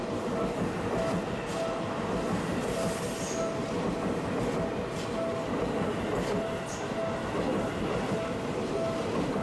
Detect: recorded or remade recorded